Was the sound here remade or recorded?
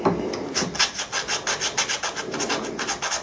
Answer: recorded